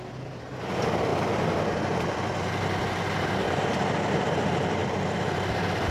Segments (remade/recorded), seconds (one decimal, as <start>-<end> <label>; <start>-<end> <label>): 0.0-5.9 remade